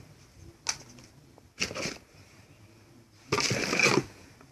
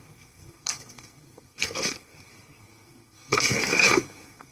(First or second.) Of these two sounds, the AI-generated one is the second